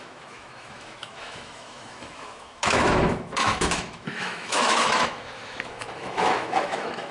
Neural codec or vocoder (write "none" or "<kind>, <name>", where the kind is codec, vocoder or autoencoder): autoencoder, DAC-VAE